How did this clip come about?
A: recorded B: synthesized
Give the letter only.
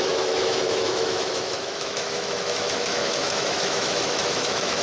B